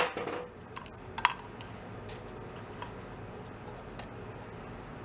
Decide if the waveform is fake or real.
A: real